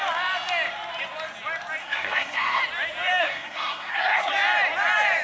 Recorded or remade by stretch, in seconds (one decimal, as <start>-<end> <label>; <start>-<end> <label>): 0.0-1.8 recorded; 1.8-2.6 remade; 2.6-3.2 recorded; 3.2-4.3 remade; 4.3-5.2 recorded